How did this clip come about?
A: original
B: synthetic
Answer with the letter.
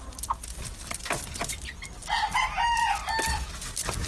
A